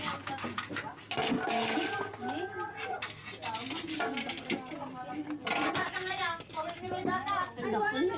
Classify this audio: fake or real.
real